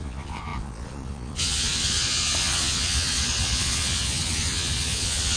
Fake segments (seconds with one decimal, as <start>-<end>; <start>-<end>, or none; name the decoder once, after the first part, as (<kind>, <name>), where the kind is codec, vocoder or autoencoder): 0.0-5.4 (vocoder, Vocos)